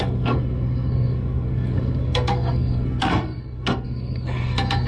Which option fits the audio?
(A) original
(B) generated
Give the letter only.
B